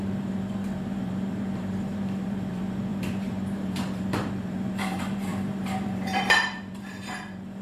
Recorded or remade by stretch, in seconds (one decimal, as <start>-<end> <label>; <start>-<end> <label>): 0.0-7.6 remade

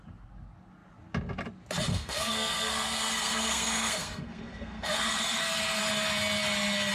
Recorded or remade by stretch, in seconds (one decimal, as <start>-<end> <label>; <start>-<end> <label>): 0.0-1.9 recorded; 1.9-5.8 remade; 5.8-6.9 recorded

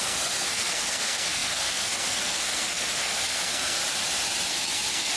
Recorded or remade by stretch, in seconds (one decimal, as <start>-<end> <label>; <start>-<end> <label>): 0.0-3.8 remade; 3.8-4.5 recorded; 4.5-5.2 remade

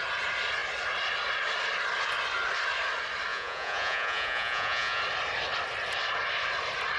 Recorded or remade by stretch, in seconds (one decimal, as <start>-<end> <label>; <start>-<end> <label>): 0.0-3.3 recorded; 3.3-5.0 remade; 5.0-7.0 recorded

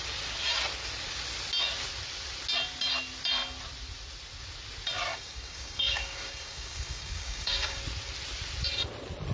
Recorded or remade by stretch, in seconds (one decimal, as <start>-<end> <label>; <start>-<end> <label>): 0.0-5.1 recorded; 5.1-7.8 remade; 7.8-9.3 recorded

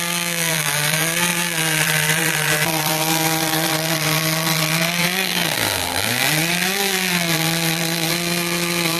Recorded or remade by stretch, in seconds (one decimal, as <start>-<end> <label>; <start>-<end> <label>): 0.0-9.0 remade

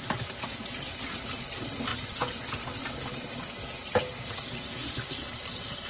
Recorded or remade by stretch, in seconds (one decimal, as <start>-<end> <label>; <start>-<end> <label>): 0.0-1.9 recorded; 1.9-2.5 remade; 2.5-5.9 recorded

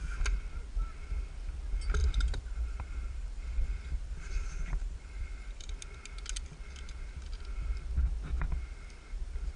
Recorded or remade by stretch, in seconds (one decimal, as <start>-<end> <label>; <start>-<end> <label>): 0.0-2.0 recorded; 2.0-5.7 remade; 5.7-9.6 recorded